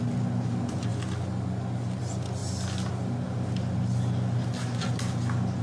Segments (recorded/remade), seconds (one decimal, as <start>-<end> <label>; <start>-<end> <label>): 0.0-5.6 recorded